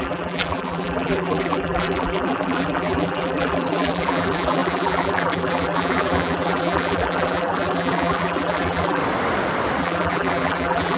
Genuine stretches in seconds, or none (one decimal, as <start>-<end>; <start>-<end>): 9.0-9.8